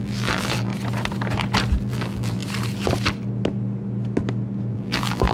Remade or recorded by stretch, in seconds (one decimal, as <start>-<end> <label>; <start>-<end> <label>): 0.0-0.7 remade; 0.7-1.8 recorded; 1.8-2.4 remade; 2.4-4.7 recorded; 4.7-5.3 remade